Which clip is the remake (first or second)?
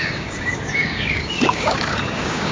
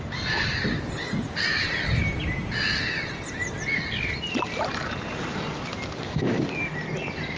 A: first